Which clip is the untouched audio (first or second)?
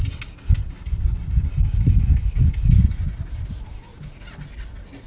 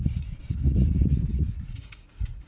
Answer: first